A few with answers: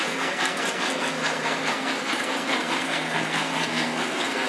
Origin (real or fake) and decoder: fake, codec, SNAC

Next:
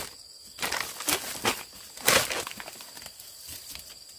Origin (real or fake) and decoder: real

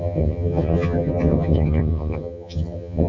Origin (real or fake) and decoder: fake, vocoder, HiFi-GAN